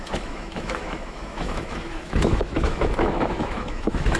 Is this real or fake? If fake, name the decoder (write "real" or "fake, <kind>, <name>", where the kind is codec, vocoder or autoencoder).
fake, autoencoder, DAC-VAE